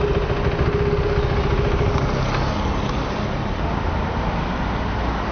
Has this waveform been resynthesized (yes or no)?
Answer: no